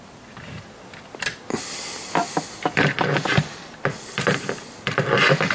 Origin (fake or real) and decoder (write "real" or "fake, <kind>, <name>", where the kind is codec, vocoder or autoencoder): real